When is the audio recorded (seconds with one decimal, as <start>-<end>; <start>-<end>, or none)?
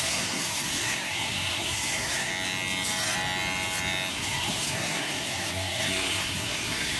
2.3-4.1